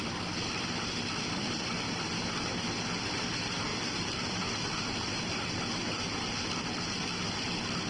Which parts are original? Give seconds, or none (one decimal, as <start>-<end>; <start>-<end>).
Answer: 0.0-7.9